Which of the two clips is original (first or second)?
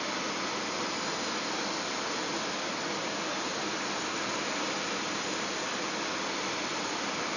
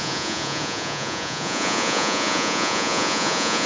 first